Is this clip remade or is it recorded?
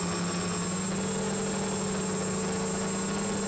recorded